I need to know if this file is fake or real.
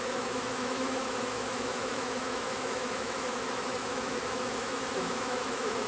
fake